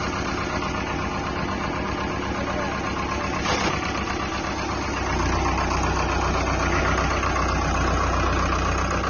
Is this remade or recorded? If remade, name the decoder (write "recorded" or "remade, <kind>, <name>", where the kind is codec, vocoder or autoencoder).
recorded